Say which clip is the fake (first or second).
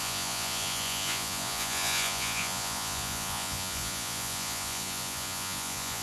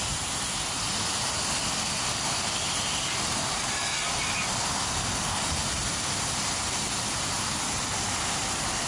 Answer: first